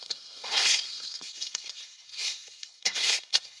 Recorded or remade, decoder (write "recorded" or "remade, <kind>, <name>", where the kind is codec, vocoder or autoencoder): remade, codec, SNAC